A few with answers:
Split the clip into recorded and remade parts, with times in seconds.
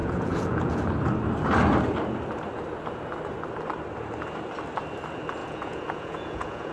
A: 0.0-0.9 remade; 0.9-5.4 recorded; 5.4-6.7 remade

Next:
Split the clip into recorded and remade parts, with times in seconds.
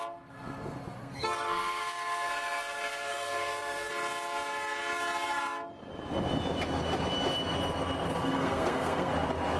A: 0.0-1.0 recorded; 1.0-3.9 remade; 3.9-8.2 recorded; 8.2-9.1 remade; 9.1-9.6 recorded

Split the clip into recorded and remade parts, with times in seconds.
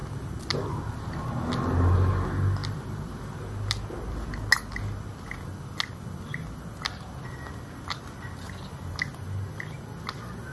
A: 0.0-2.6 recorded; 2.6-3.2 remade; 3.2-10.5 recorded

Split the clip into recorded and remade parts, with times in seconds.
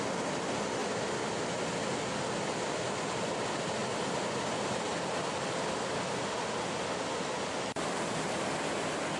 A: 0.0-9.2 recorded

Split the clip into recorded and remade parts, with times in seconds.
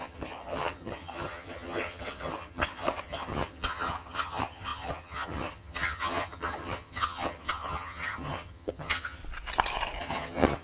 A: 0.0-9.2 remade; 9.2-10.0 recorded; 10.0-10.6 remade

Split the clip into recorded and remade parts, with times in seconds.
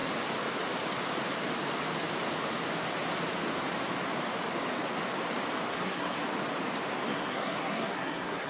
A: 0.0-5.7 recorded; 5.7-6.2 remade; 6.2-7.1 recorded; 7.1-8.5 remade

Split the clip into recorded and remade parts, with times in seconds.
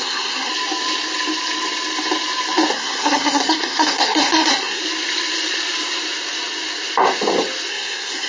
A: 0.0-0.5 remade; 0.5-2.7 recorded; 2.7-4.8 remade; 4.8-7.7 recorded; 7.7-8.3 remade